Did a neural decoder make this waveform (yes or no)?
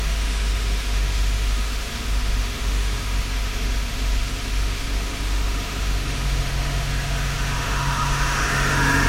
yes